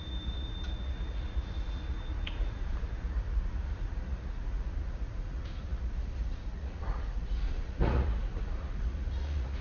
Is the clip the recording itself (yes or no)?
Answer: no